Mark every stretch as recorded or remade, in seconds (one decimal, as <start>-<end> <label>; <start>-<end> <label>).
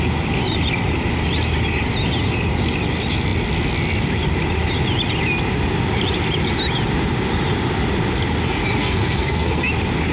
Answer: 0.0-8.8 recorded; 8.8-9.7 remade; 9.7-10.1 recorded